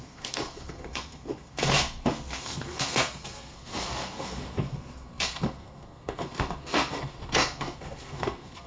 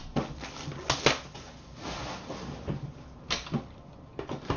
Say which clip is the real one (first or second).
second